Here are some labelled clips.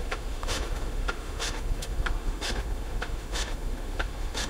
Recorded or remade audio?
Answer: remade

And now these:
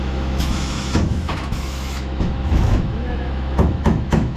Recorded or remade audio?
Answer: remade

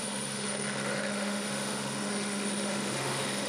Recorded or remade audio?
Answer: remade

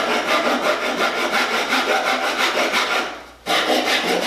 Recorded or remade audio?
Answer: recorded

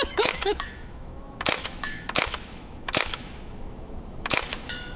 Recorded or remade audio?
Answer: remade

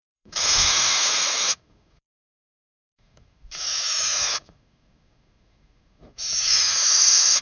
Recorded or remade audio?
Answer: remade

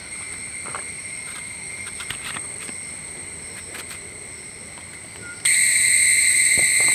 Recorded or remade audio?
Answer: recorded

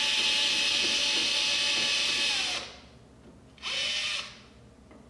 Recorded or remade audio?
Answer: recorded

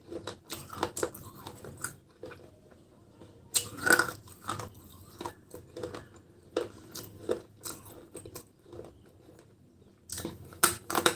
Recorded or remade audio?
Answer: recorded